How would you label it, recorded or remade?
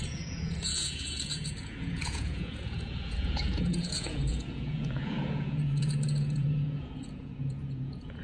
remade